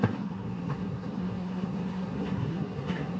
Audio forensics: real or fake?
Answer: fake